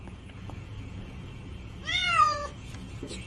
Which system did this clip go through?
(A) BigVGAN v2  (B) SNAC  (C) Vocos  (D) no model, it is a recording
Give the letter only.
C